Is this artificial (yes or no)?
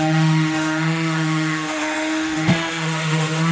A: yes